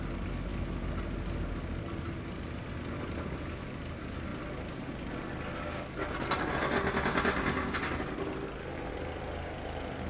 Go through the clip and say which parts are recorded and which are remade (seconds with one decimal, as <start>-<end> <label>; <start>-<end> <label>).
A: 0.0-10.1 recorded